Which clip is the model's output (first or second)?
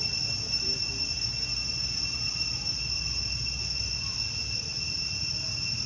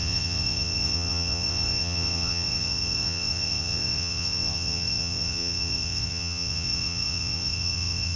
second